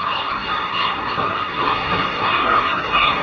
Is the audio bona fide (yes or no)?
no